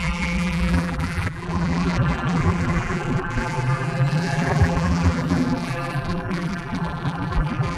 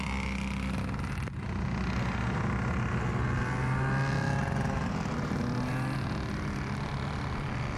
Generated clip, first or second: first